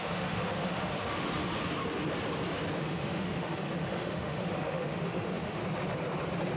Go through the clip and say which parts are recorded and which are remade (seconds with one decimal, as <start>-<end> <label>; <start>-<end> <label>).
0.0-1.5 remade; 1.5-2.8 recorded; 2.8-5.6 remade; 5.6-6.6 recorded